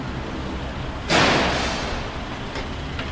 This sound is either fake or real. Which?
real